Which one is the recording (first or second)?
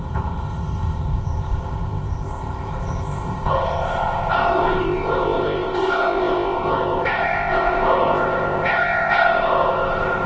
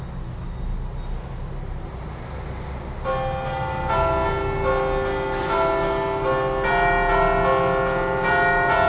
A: second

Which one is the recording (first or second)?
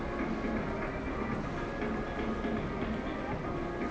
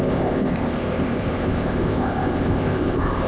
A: first